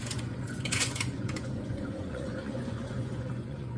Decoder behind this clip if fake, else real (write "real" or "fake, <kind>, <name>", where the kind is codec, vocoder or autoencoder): fake, vocoder, Vocos